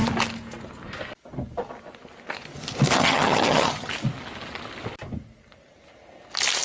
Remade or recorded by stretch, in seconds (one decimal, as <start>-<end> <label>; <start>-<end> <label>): 0.0-3.0 recorded; 3.0-3.9 remade; 3.9-6.6 recorded